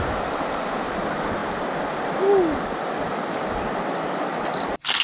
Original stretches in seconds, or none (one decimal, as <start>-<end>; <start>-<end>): 0.0-5.0